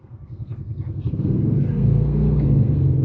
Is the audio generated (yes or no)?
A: yes